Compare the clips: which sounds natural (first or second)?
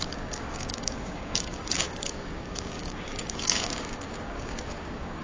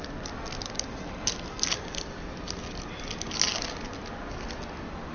second